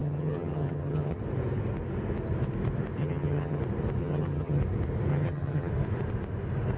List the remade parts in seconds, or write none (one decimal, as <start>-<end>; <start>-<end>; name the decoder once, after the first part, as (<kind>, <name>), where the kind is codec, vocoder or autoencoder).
0.0-1.2 (vocoder, HiFi-GAN); 3.0-3.6; 4.0-4.6; 5.1-5.7